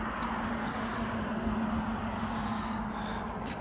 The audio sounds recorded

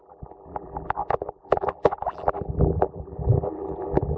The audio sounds remade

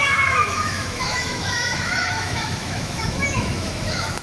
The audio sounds remade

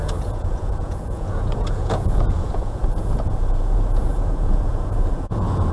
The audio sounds remade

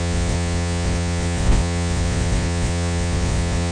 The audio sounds remade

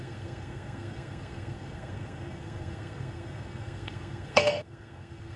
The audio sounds remade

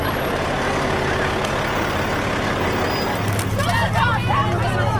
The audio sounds recorded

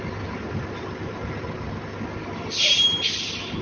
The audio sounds recorded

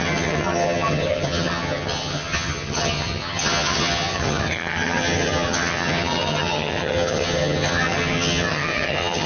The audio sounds remade